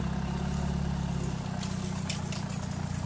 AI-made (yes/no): no